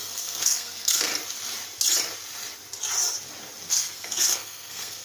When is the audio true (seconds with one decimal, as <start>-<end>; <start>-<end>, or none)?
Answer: 1.1-3.7

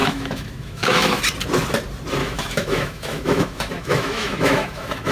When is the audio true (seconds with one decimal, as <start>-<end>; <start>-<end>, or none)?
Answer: 1.2-2.2

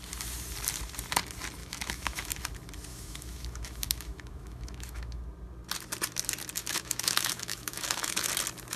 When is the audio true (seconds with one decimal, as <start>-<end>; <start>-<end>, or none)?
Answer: 0.0-1.6; 2.4-2.9; 5.2-6.6; 8.3-8.8

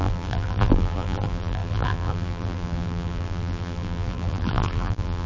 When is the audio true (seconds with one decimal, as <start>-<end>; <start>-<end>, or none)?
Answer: none

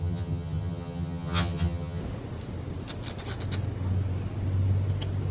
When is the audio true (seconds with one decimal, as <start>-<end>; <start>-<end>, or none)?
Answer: 2.0-5.3

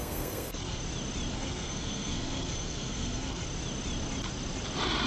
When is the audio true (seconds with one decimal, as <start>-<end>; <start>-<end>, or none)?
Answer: 0.8-1.3; 3.4-5.1

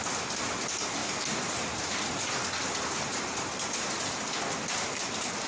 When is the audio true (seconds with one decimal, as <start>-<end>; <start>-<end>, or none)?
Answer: 0.0-1.0; 4.2-5.5

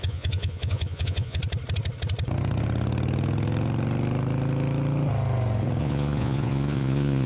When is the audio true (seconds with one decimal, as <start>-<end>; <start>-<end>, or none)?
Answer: 1.4-5.8